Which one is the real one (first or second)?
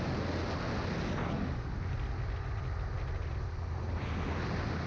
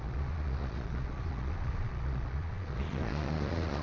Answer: first